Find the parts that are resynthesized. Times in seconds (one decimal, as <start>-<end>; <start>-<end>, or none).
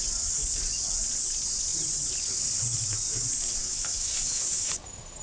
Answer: 3.6-4.7